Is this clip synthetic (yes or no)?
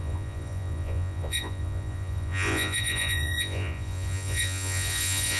yes